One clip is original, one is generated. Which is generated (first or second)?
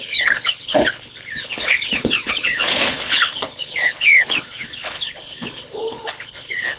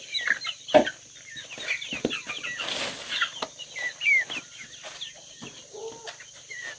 first